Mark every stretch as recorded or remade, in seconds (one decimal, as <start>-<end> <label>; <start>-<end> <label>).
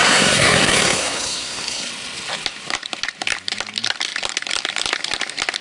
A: 0.0-1.9 remade; 1.9-5.6 recorded